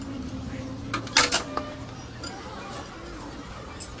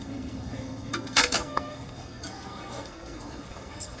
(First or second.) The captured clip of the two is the first